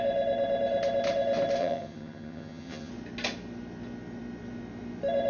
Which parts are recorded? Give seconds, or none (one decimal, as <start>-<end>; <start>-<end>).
0.0-1.6; 2.9-5.3